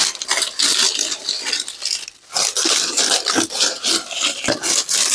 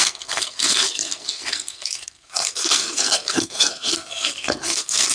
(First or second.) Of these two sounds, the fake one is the second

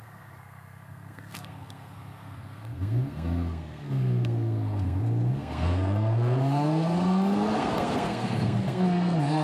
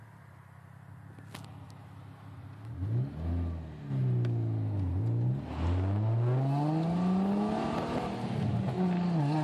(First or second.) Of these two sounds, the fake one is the first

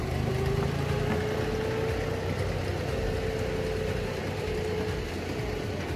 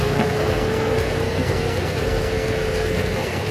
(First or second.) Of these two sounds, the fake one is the second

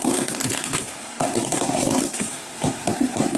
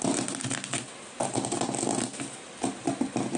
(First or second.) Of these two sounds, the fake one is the first